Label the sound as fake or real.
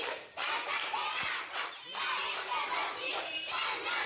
fake